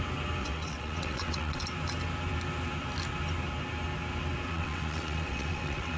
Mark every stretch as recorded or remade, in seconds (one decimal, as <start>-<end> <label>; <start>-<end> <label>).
0.0-0.4 recorded; 0.4-1.6 remade; 1.6-4.5 recorded; 4.5-6.0 remade